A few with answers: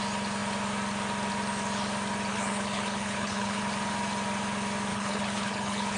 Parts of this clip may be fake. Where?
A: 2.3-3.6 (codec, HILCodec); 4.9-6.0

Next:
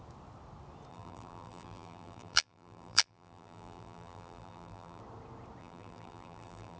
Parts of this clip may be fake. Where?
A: 0.9-5.0 (vocoder, BigVGAN v2); 5.6-6.8

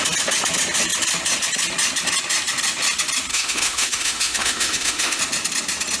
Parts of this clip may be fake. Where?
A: 3.3-5.2 (autoencoder, DAC-VAE)

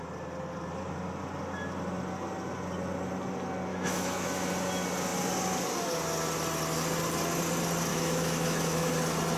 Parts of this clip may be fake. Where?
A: 3.7-4.5 (autoencoder, DAC-VAE); 7.9-8.9

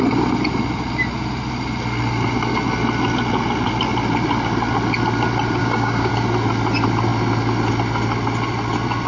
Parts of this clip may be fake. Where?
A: 5.6-6.1 (codec, DAC)

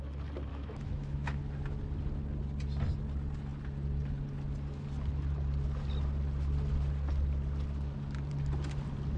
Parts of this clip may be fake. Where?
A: 0.5-1.4 (autoencoder, DAC-VAE)

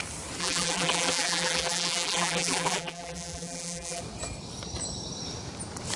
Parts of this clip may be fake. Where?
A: 0.4-4.0 (vocoder, BigVGAN v2)

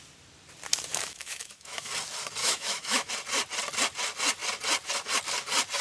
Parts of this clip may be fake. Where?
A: 0.9-1.9 (autoencoder, DAC-VAE); 2.4-3.1